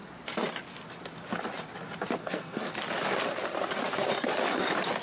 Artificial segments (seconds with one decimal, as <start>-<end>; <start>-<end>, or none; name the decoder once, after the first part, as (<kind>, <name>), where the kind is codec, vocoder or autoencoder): 2.2-2.7 (codec, SNAC)